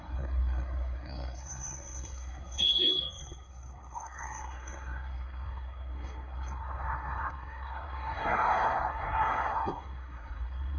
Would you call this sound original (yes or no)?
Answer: no